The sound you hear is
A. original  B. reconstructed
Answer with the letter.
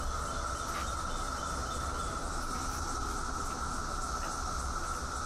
A